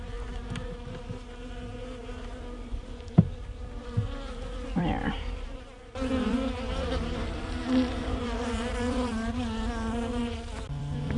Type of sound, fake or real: fake